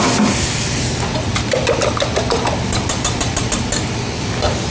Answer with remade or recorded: recorded